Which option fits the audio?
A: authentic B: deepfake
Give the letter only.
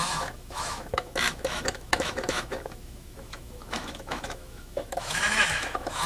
B